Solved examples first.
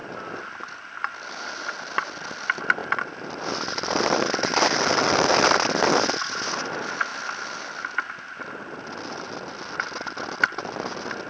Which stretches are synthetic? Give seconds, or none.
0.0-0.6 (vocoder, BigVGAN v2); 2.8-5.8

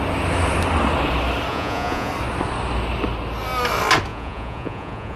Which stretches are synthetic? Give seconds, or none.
1.5-2.1 (vocoder, Vocos); 4.1-5.2

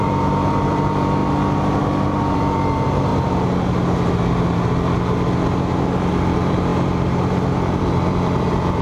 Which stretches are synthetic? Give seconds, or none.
0.0-1.2 (vocoder, BigVGAN v2); 2.1-3.1; 6.1-6.7; 7.8-8.8

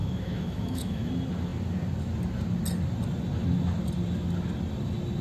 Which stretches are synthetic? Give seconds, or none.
0.0-1.1 (autoencoder, DAC-VAE)

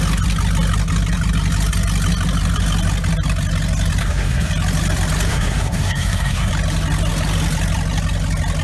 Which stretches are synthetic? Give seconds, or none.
4.0-4.5 (codec, SNAC); 5.3-6.5

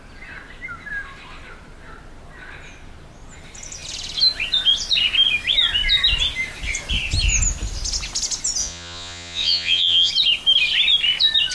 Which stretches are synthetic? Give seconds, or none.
8.6-10.1 (vocoder, Vocos)

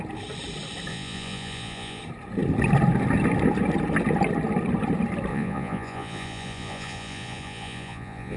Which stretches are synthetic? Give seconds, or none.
0.9-2.0 (vocoder, Vocos); 5.3-8.4